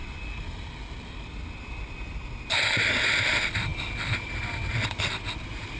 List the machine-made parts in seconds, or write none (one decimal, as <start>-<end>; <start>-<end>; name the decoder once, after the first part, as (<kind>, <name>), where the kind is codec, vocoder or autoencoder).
none